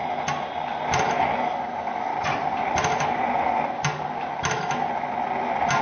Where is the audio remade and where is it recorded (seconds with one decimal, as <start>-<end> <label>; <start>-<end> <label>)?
0.0-1.2 recorded; 1.2-2.1 remade; 2.1-5.8 recorded